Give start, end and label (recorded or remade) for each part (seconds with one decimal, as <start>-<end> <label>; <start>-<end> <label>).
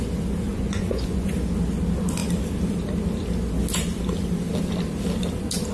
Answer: 0.0-0.5 recorded; 0.5-1.3 remade; 1.3-5.7 recorded